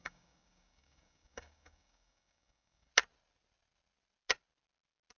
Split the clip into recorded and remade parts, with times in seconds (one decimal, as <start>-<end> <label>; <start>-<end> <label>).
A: 0.0-2.9 remade; 2.9-5.2 recorded